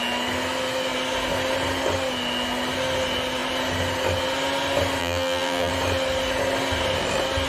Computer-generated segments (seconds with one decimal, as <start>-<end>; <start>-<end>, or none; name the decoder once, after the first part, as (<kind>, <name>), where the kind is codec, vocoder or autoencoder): 5.0-5.7 (vocoder, BigVGAN v2)

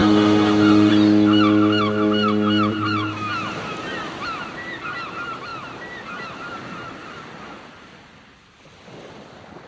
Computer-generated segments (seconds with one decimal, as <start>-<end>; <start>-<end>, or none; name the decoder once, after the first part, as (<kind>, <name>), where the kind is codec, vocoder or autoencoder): 0.0-0.9 (autoencoder, DAC-VAE)